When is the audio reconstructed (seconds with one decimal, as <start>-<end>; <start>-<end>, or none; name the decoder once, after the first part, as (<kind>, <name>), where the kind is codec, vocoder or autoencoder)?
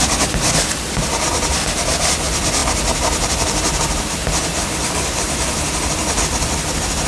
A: 0.0-7.1 (vocoder, BigVGAN v2)